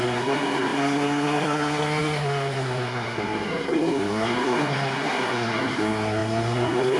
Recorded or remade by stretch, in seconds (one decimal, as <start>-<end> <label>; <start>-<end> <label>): 0.0-7.0 remade

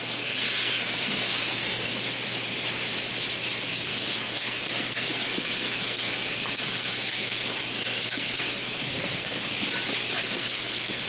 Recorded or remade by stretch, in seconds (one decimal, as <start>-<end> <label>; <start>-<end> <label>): 0.0-1.9 remade; 1.9-3.7 recorded; 3.7-9.5 remade; 9.5-10.2 recorded; 10.2-11.1 remade

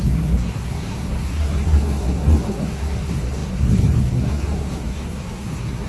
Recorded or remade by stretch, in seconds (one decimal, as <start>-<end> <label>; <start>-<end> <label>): 0.0-5.9 remade

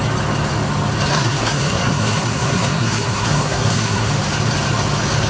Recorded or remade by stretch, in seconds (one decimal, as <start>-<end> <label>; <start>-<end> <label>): 0.0-1.1 recorded; 1.1-4.1 remade; 4.1-5.3 recorded

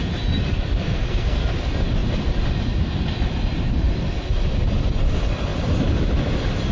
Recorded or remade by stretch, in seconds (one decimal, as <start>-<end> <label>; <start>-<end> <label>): 0.0-0.8 recorded; 0.8-1.4 remade; 1.4-6.7 recorded

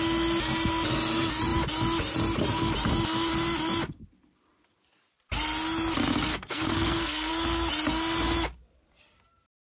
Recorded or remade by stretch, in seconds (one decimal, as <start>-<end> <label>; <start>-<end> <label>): 0.0-6.3 recorded; 6.3-7.3 remade; 7.3-9.6 recorded